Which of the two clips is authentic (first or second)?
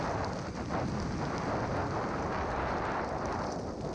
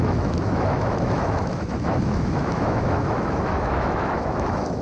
first